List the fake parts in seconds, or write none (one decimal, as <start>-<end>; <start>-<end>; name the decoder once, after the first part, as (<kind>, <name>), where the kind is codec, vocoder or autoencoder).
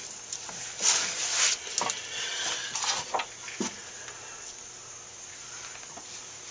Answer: none